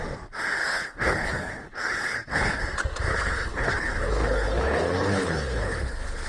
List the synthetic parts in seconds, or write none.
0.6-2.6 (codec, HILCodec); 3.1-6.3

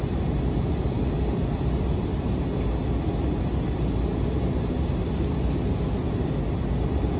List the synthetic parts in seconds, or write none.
none

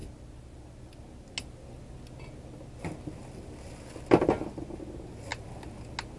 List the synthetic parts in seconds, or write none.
none

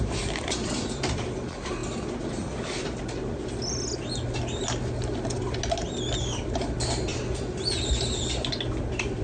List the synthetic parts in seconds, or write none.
none

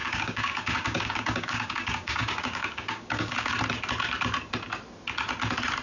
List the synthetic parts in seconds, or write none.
0.0-3.5 (codec, DAC)

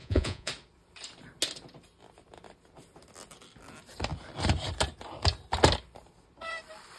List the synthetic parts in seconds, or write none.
0.0-0.5 (vocoder, Vocos)

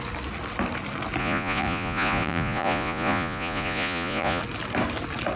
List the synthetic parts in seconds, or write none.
1.2-4.4 (vocoder, Vocos)

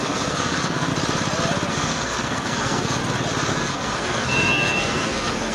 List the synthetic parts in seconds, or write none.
0.0-0.9 (codec, SNAC); 1.7-3.0; 3.5-5.5